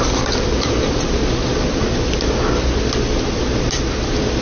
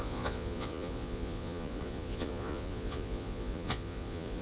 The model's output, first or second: second